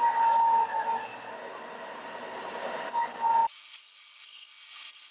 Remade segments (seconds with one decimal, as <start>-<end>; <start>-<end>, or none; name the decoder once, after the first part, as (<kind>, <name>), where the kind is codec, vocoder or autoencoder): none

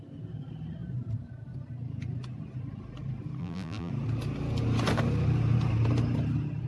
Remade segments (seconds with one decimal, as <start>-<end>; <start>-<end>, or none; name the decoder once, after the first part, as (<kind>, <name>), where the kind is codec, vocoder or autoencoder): 3.4-3.9 (vocoder, BigVGAN v2)

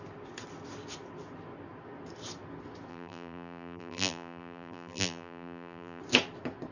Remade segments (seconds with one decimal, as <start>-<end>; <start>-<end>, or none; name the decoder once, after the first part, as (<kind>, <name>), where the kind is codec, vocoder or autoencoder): 2.9-6.0 (vocoder, BigVGAN v2)

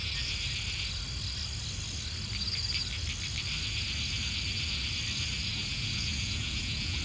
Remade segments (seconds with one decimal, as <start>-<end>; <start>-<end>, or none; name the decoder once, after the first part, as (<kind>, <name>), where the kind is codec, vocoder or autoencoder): 5.5-7.0 (vocoder, Vocos)

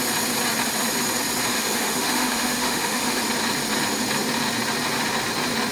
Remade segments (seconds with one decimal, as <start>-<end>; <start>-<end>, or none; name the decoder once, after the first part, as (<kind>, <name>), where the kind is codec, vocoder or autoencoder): 1.5-3.2 (autoencoder, DAC-VAE)